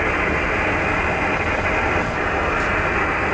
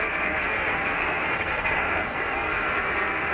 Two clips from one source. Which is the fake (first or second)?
second